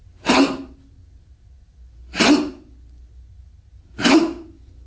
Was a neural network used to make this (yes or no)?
no